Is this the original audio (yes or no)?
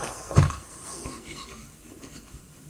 no